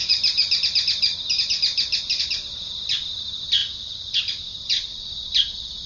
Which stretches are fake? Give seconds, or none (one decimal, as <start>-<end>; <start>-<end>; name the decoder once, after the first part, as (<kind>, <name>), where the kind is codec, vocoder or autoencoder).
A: 3.6-5.1 (vocoder, BigVGAN v2)